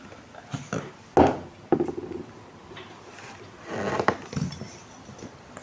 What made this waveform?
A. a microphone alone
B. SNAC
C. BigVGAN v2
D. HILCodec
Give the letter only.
A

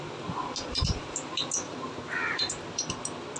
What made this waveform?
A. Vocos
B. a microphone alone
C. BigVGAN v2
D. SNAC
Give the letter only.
B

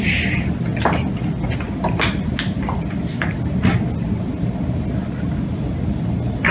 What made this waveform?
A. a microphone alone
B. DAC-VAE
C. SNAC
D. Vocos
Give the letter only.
A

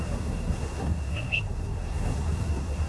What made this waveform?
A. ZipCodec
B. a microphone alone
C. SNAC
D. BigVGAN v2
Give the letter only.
C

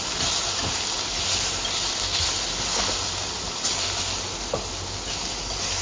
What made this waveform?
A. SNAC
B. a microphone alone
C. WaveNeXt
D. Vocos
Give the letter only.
B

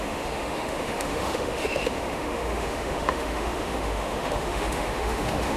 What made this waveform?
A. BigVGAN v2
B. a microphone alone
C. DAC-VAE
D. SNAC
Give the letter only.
C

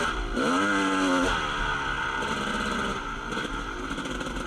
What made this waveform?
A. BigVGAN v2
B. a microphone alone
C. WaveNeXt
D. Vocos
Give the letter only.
B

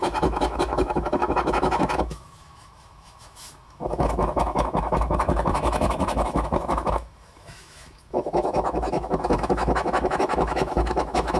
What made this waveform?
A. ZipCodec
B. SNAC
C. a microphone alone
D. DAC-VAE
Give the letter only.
D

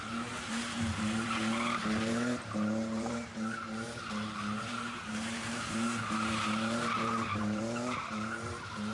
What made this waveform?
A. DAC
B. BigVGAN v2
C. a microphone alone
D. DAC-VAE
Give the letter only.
B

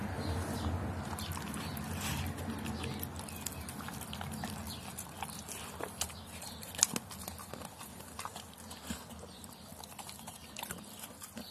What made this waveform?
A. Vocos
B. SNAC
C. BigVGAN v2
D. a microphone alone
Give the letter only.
D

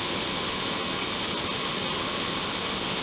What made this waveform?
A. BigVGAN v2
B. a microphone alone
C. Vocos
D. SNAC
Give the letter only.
B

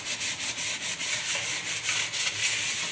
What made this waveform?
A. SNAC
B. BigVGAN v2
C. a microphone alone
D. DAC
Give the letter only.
C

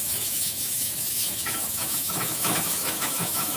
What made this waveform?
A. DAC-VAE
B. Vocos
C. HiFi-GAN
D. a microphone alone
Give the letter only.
A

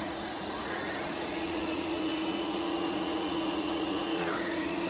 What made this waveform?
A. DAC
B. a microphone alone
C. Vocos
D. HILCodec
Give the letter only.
C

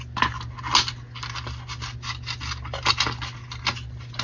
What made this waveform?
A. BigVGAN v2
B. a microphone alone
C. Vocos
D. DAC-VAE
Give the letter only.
B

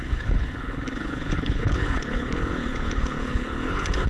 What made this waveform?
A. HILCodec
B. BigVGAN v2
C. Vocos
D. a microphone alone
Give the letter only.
A